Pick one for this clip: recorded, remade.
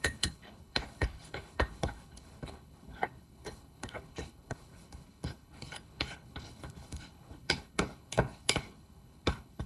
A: remade